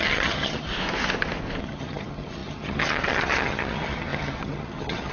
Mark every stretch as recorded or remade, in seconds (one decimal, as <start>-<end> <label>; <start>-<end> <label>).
0.0-0.7 remade; 0.7-1.6 recorded; 1.6-5.1 remade